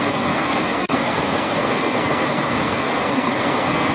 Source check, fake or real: fake